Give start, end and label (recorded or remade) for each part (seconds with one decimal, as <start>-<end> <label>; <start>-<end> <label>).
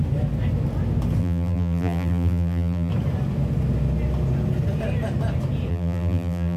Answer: 0.0-1.2 recorded; 1.2-2.9 remade; 2.9-5.7 recorded; 5.7-6.6 remade